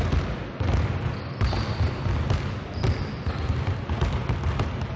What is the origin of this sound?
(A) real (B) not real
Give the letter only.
A